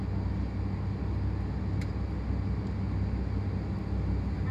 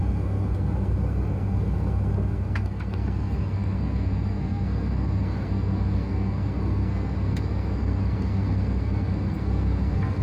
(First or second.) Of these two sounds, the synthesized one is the second